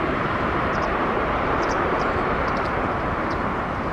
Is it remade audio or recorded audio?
remade